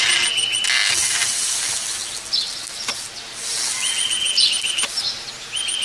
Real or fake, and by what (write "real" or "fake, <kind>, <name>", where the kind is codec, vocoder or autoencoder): real